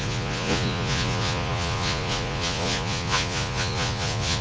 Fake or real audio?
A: fake